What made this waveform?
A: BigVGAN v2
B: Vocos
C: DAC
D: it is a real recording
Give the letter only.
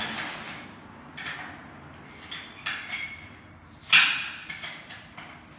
D